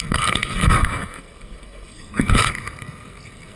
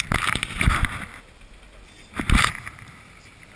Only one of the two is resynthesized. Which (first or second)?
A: first